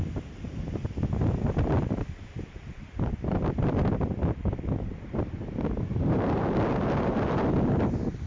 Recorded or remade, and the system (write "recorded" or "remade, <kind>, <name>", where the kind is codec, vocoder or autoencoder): recorded